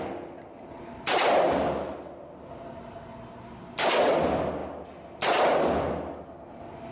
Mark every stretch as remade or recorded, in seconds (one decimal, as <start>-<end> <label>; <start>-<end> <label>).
0.0-6.9 recorded